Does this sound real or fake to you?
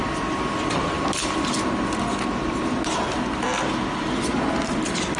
real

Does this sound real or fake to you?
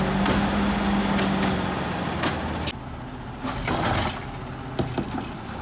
real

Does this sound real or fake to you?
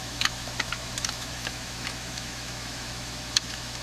fake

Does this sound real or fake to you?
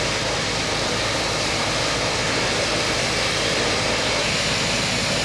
real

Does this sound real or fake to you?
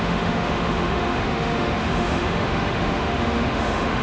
fake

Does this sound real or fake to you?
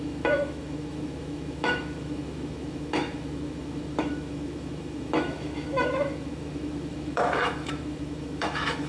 fake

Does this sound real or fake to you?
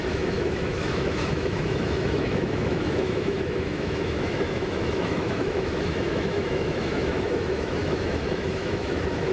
fake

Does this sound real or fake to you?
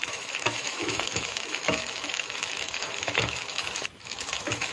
fake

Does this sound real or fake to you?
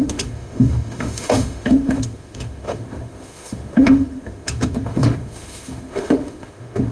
fake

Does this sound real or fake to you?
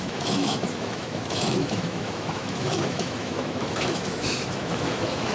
fake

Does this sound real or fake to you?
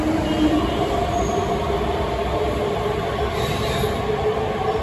real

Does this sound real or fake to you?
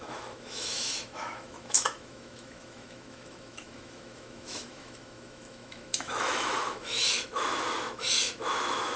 fake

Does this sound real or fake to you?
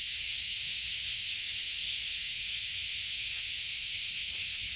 fake